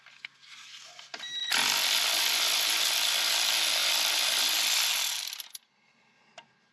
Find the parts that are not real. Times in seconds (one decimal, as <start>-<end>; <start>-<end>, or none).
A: 3.8-4.4